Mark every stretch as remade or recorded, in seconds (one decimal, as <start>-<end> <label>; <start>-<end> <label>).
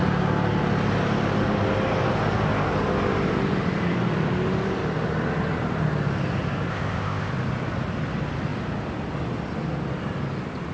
0.0-6.7 recorded; 6.7-7.3 remade; 7.3-10.7 recorded